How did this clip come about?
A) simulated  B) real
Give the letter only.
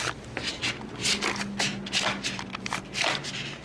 B